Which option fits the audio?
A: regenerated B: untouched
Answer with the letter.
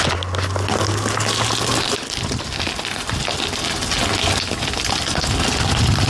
B